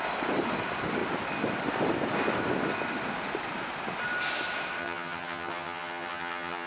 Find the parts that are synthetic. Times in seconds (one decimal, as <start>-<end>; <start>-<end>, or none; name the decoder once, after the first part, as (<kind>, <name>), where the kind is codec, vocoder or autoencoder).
4.8-6.7 (vocoder, HiFi-GAN)